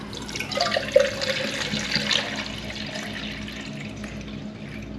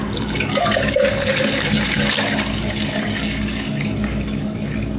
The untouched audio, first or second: first